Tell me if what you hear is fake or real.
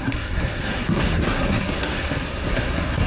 fake